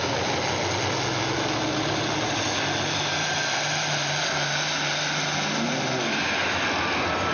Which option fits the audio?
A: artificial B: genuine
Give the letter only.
B